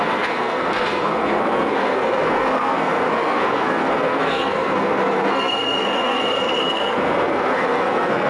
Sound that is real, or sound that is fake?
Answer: fake